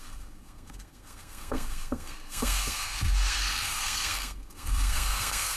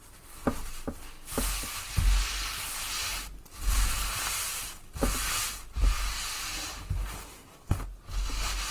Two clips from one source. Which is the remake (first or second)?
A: first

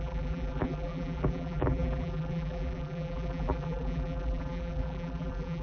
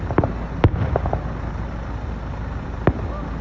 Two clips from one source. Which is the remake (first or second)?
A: first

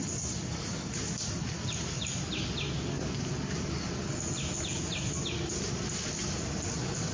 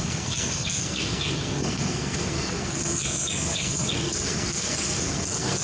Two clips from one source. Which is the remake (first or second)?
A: second